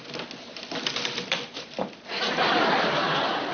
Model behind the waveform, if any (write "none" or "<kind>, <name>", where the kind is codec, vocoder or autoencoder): none